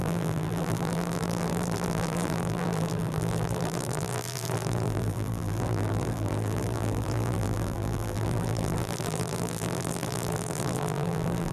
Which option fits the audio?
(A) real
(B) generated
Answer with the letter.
B